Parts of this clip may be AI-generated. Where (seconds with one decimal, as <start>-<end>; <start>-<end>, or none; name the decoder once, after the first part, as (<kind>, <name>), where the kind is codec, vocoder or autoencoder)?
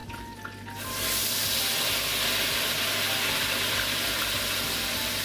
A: none